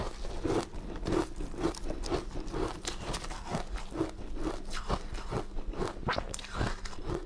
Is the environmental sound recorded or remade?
recorded